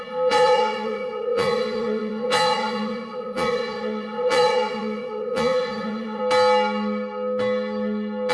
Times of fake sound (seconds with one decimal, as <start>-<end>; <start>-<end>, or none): 0.0-6.2